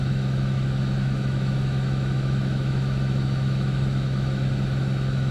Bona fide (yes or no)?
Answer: no